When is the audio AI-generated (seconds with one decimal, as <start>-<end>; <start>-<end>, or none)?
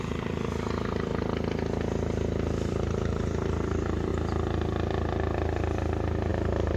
0.0-1.1; 2.7-4.1; 6.3-6.8